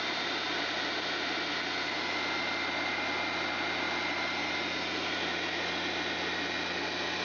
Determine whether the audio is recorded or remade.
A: recorded